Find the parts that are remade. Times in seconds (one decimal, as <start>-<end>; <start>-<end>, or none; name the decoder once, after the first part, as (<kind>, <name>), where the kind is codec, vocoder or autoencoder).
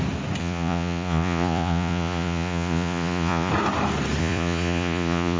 0.4-3.5 (vocoder, Vocos); 4.2-5.4